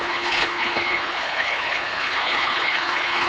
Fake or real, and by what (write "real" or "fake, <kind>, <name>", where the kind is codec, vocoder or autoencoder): fake, codec, HILCodec